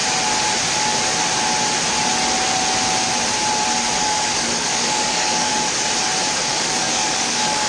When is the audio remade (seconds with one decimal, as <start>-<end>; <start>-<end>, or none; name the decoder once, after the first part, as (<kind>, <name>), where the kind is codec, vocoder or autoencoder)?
4.0-5.5 (codec, DAC); 6.5-7.7